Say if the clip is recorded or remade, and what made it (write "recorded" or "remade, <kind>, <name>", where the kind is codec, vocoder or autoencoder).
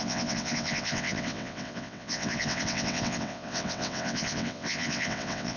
remade, vocoder, WaveNeXt